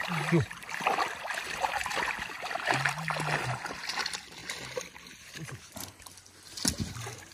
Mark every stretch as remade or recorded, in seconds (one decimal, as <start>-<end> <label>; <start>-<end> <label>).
0.0-7.3 recorded